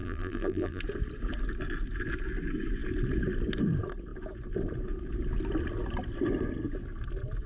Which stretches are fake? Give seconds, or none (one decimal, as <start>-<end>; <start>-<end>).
0.0-0.8